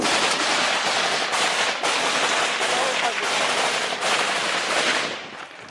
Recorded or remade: recorded